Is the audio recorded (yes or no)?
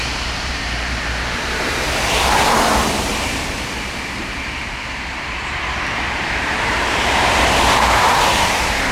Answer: no